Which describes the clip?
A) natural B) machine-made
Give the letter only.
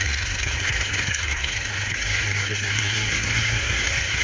B